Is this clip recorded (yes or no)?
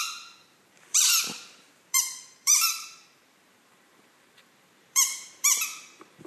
no